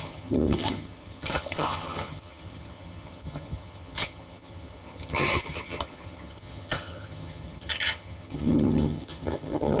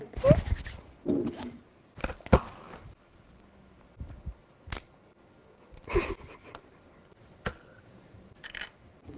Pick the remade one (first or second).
first